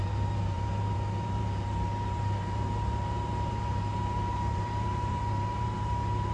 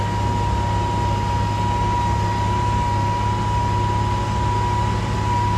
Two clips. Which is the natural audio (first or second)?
second